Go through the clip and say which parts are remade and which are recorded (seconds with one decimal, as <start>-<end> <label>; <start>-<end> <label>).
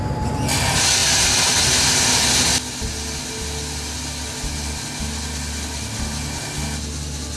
0.0-7.4 recorded